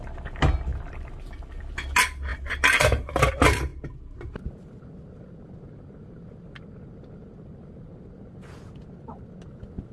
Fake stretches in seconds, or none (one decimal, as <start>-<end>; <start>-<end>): 0.7-1.6; 2.3-3.3